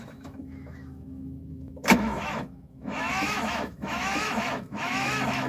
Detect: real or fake fake